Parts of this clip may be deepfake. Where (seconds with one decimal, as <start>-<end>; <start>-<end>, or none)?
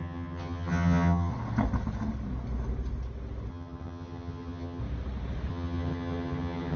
0.0-1.3; 3.5-4.8; 5.5-6.8